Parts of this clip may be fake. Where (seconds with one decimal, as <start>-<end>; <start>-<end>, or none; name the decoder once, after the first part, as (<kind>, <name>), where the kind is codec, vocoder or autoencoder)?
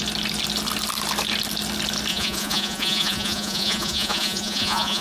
2.1-5.0 (vocoder, Vocos)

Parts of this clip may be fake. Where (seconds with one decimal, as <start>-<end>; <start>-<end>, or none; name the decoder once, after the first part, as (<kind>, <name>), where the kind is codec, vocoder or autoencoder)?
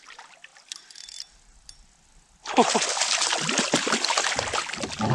none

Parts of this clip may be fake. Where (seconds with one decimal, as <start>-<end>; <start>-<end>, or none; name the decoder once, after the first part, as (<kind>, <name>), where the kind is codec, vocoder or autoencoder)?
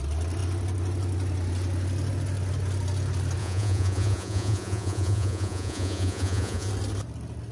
3.4-6.7 (vocoder, Vocos)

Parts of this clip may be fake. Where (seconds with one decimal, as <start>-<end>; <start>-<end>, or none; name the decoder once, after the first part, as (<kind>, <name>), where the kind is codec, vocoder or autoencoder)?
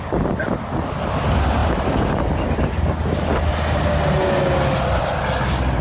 none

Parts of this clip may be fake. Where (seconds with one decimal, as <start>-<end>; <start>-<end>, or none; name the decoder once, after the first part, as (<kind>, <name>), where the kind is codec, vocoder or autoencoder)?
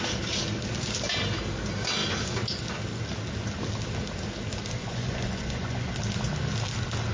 4.8-5.9 (vocoder, Vocos)